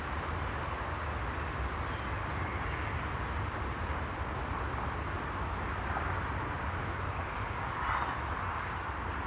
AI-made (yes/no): no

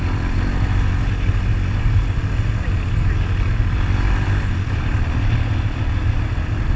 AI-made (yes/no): no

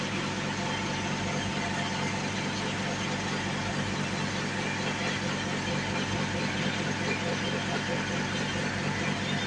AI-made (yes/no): no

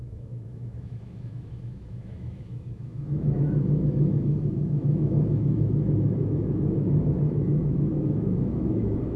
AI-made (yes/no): yes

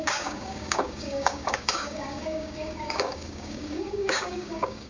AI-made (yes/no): yes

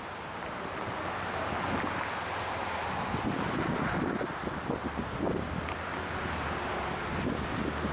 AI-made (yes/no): no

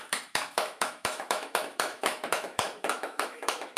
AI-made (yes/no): yes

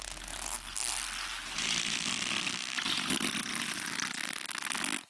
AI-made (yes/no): no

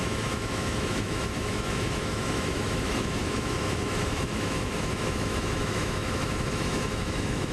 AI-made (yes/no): yes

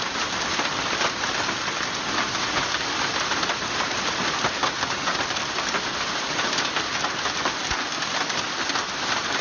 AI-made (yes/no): no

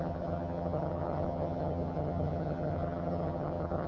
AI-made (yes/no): yes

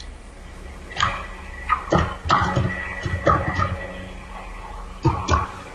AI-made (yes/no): no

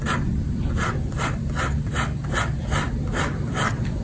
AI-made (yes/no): no